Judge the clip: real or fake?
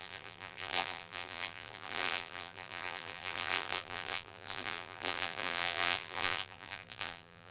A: fake